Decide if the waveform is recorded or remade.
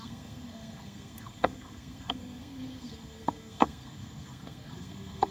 remade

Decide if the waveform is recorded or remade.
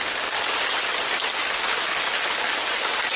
recorded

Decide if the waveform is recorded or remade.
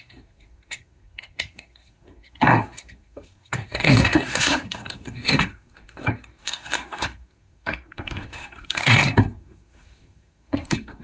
remade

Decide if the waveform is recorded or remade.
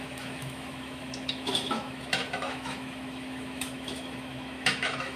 remade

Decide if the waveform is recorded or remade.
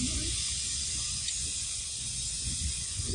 remade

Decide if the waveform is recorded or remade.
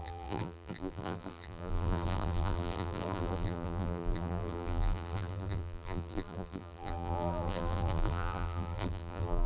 remade